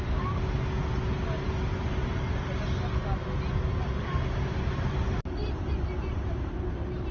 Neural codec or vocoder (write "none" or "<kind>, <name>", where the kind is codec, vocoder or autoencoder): none